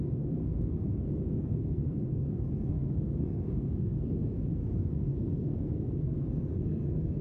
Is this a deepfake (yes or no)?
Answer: yes